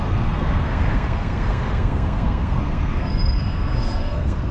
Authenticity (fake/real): fake